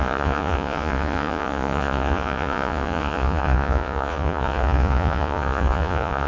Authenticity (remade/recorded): remade